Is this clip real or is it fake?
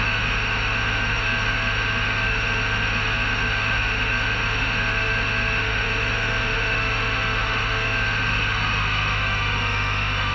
fake